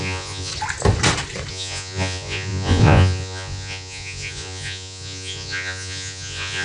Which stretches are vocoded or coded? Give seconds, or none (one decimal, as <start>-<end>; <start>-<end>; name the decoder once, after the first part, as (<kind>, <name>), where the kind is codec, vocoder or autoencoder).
0.0-0.5 (vocoder, Vocos); 1.5-6.6